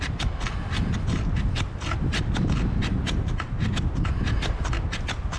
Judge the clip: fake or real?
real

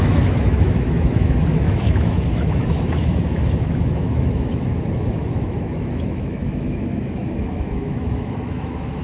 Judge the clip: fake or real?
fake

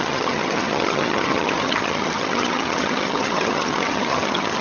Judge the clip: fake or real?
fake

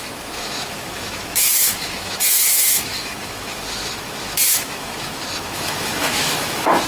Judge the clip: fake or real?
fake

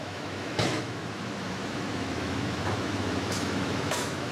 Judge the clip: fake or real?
fake